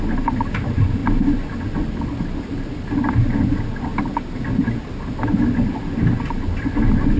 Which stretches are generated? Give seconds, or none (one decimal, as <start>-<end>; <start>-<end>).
none